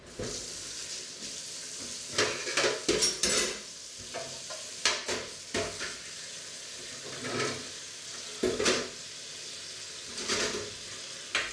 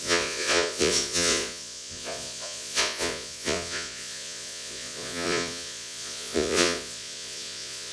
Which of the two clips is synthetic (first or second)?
second